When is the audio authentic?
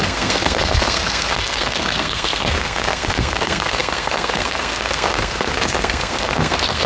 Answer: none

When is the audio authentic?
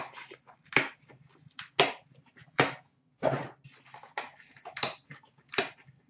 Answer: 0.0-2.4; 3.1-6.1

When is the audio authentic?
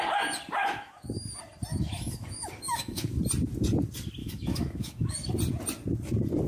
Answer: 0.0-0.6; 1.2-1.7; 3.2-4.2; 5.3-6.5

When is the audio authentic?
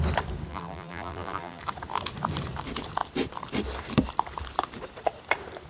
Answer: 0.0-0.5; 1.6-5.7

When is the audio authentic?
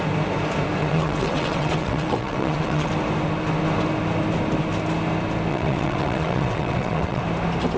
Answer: 0.0-0.8; 2.9-5.5; 7.2-7.8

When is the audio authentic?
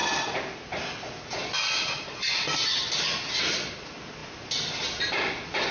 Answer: 0.0-5.7